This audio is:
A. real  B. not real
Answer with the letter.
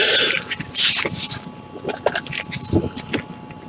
A